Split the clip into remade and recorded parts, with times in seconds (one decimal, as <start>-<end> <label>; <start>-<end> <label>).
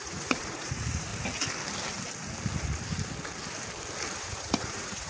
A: 0.0-1.1 remade; 1.1-4.2 recorded; 4.2-5.1 remade